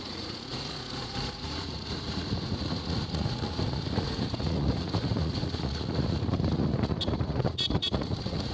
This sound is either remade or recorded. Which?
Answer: remade